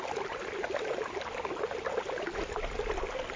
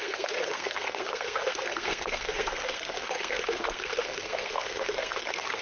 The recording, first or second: first